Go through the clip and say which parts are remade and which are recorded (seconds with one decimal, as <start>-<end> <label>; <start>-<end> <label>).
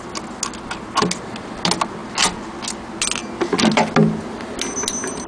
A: 0.0-5.3 recorded